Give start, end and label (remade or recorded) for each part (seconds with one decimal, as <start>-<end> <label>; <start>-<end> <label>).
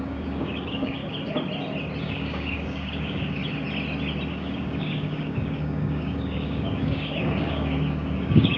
0.0-1.0 remade; 1.0-2.0 recorded; 2.0-3.4 remade; 3.4-4.3 recorded; 4.3-8.6 remade